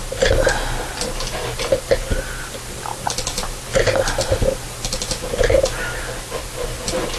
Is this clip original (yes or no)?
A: yes